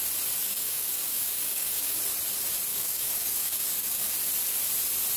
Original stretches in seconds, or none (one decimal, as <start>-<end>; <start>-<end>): 0.0-0.4; 2.0-2.7; 4.1-5.2